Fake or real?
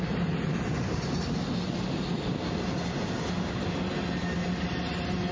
real